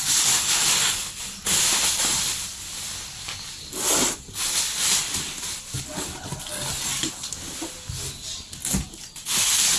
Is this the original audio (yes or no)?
yes